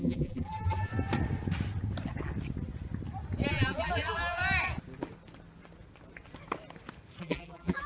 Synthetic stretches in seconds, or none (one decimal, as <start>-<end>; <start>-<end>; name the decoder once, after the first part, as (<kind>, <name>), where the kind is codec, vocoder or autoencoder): 0.0-0.9 (vocoder, BigVGAN v2); 3.5-4.4; 7.2-7.9